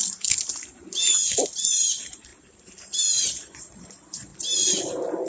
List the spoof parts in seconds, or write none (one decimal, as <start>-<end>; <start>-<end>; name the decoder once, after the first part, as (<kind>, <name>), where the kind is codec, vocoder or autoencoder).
1.9-2.3 (vocoder, Vocos); 3.3-4.3